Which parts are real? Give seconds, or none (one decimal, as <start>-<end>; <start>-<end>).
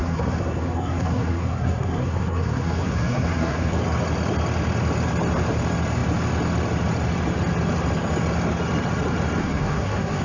3.8-9.4